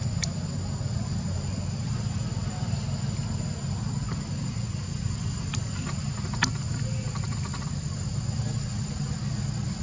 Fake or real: real